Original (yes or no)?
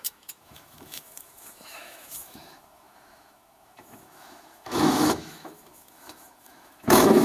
no